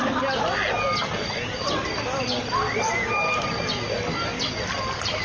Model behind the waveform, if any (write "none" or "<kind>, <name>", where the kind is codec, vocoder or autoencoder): none